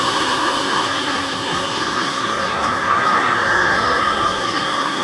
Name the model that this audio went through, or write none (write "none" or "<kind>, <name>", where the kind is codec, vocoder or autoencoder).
codec, SNAC